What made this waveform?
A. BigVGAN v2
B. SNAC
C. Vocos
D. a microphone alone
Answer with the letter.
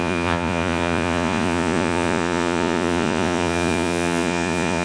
C